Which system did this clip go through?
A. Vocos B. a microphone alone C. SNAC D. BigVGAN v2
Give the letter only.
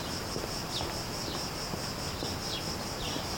B